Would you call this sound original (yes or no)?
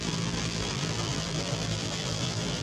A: no